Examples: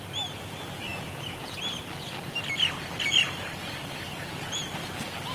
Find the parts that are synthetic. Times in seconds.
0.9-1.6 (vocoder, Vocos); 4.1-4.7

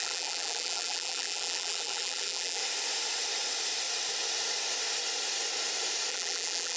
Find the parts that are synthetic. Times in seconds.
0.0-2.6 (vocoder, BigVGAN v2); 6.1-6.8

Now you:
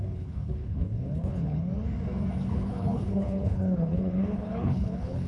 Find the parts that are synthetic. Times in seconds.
0.0-1.7 (codec, HILCodec); 2.5-5.3

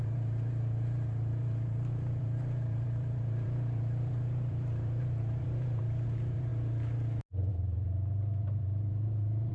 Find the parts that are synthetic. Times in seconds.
0.0-6.5 (vocoder, BigVGAN v2); 7.5-9.5

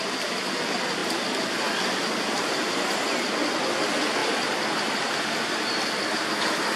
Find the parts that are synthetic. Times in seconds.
none

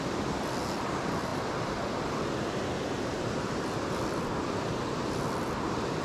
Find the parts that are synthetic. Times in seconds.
none

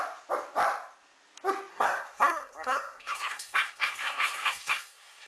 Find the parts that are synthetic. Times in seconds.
1.7-5.3 (codec, SNAC)